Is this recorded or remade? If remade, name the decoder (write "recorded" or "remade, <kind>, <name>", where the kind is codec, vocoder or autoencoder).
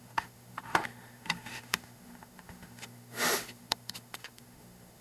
remade, autoencoder, DAC-VAE